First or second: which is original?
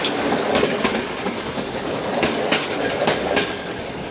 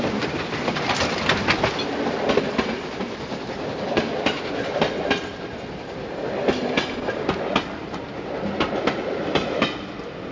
second